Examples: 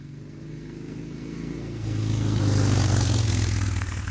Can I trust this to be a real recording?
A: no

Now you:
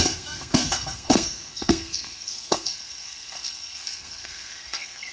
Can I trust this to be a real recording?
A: no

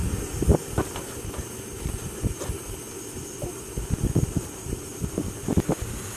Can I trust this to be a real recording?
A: yes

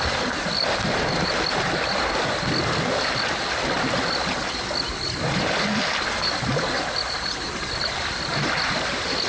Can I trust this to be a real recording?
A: yes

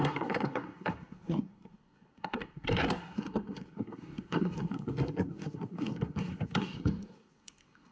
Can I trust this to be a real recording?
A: no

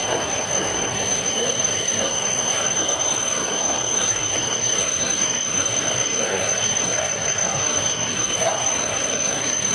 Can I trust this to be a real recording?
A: no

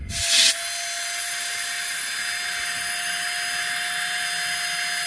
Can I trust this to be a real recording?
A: yes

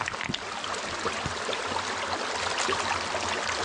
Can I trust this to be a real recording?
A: yes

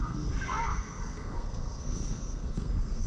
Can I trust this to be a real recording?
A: no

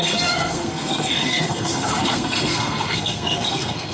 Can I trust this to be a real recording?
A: no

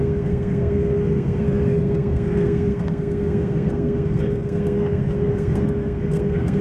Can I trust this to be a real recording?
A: no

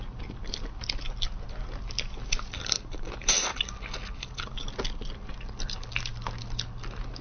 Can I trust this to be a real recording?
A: yes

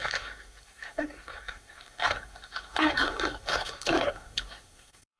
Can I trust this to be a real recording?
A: no